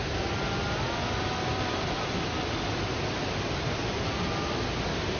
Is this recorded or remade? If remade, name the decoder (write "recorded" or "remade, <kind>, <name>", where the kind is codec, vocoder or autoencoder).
recorded